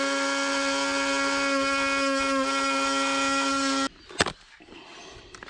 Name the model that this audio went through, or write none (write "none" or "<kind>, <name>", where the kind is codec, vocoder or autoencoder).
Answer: none